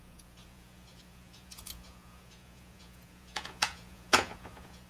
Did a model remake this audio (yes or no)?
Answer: yes